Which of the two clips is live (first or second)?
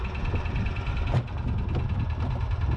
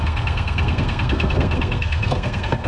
first